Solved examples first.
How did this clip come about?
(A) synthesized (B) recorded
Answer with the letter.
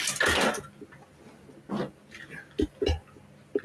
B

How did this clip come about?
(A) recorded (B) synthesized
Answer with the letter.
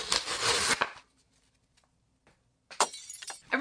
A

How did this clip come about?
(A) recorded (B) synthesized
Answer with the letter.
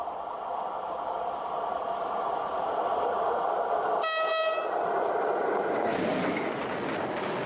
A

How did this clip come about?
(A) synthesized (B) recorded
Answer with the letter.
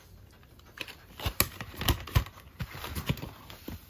B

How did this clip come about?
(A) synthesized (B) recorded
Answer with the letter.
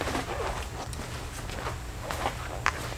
B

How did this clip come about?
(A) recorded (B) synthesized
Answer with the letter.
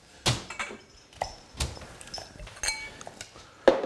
A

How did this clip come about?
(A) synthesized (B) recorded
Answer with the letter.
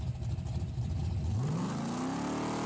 B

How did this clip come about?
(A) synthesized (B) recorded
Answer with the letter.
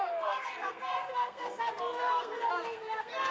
A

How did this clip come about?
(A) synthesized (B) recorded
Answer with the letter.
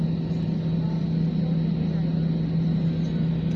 B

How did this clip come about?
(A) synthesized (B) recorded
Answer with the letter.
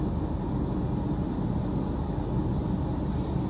B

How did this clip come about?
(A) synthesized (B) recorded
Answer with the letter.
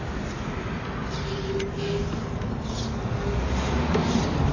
B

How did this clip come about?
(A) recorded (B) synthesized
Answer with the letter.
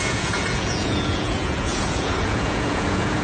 B